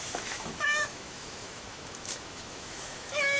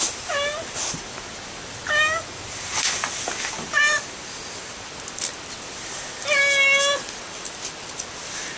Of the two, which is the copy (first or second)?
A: first